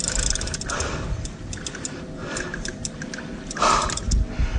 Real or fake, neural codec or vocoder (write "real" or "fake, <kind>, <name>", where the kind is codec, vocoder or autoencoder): real